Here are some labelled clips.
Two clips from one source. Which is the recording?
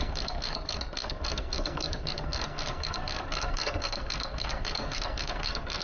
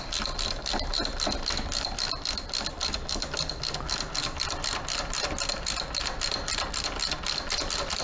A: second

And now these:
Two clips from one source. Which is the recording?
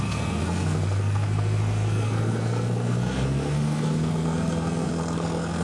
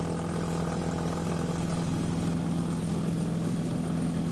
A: second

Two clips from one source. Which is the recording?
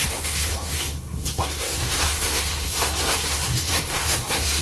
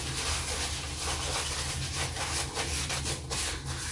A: second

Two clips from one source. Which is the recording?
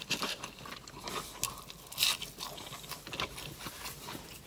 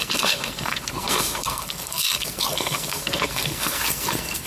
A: first